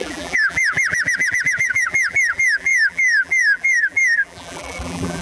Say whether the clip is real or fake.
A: fake